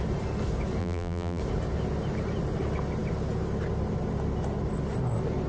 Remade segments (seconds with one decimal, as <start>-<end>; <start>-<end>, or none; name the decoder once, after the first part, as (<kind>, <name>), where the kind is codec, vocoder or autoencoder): 0.8-1.4 (vocoder, BigVGAN v2)